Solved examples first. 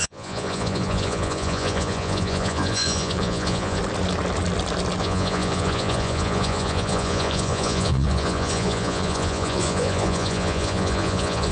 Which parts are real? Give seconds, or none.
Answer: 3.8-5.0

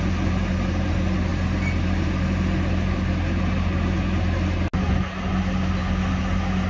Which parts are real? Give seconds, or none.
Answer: 0.0-6.7

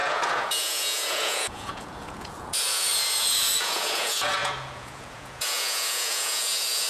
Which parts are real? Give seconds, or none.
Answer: none

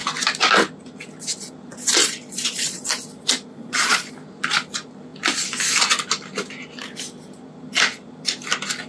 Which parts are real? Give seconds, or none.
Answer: 0.0-2.0; 2.8-3.5; 4.1-8.9

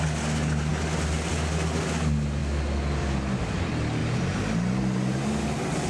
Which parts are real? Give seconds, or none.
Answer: 0.0-5.9